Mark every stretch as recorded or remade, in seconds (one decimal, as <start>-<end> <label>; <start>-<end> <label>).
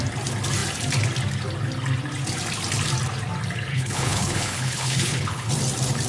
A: 0.0-3.7 recorded; 3.7-5.5 remade; 5.5-6.1 recorded